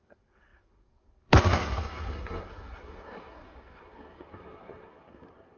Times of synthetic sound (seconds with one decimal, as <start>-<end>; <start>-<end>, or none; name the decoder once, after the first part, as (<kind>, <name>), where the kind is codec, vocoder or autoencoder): 0.0-5.6 (codec, SNAC)